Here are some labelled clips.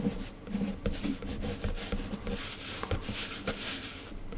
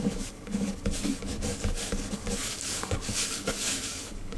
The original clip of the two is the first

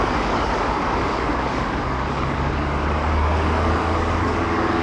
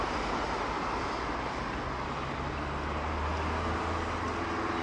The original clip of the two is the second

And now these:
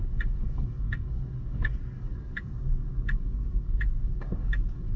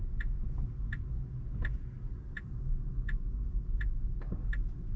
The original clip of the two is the second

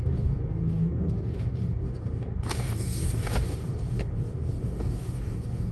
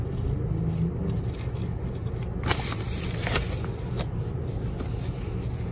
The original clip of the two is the second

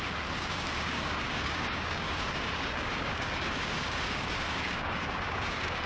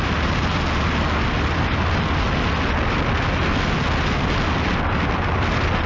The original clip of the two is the second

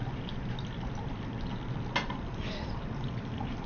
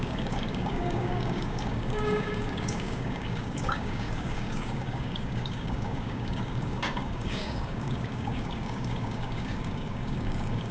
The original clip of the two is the first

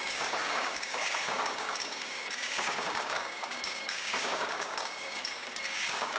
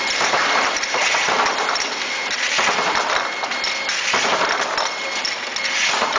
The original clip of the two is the second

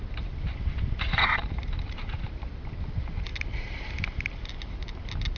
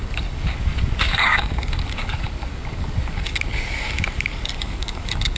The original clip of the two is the first